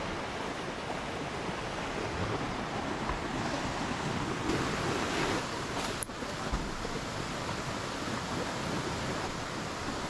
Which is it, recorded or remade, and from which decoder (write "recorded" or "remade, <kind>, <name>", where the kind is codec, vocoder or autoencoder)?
recorded